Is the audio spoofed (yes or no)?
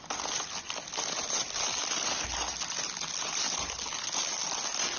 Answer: no